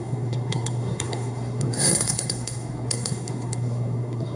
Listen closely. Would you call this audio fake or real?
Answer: fake